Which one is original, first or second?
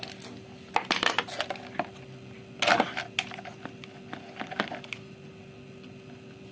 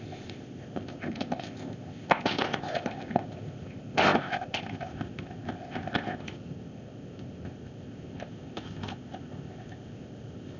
first